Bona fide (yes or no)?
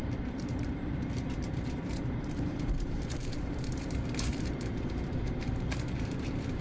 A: no